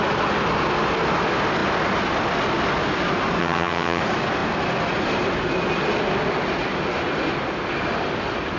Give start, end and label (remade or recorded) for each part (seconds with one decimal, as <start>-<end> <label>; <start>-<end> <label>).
0.0-3.4 recorded; 3.4-4.0 remade; 4.0-8.6 recorded